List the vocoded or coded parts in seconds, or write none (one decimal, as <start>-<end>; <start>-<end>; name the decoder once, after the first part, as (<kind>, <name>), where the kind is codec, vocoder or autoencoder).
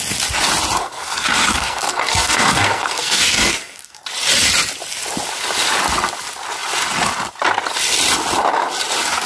0.8-4.0 (codec, SNAC)